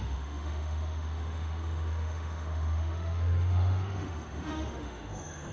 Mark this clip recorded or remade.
remade